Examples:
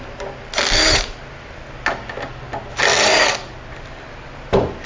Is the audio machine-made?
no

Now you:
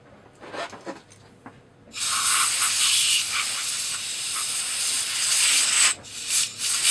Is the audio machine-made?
no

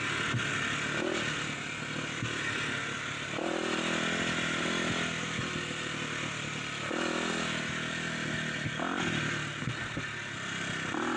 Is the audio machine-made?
no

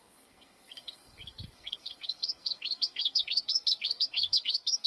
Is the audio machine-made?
yes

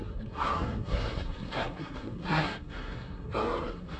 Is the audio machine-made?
yes